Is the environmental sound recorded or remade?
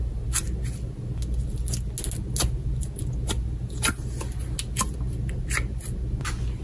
recorded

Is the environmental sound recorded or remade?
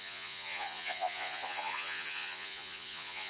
remade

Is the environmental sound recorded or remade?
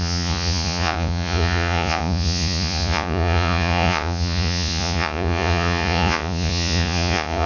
remade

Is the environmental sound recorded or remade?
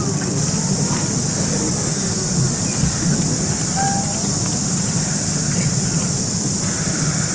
recorded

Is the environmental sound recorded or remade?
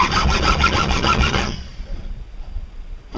remade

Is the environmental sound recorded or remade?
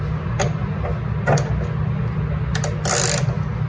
recorded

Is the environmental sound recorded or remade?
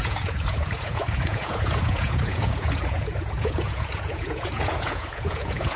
remade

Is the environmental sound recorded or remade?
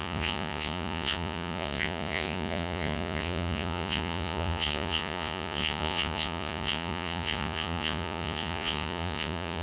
remade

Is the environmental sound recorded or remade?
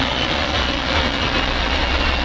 remade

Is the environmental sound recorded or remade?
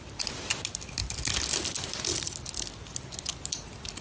recorded